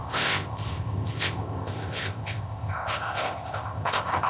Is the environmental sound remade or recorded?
remade